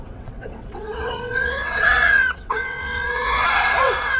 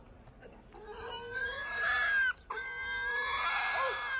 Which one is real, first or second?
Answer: second